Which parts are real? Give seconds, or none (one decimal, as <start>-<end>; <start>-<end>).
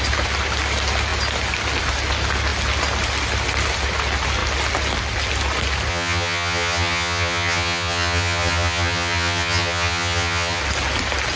0.0-5.9; 10.6-11.4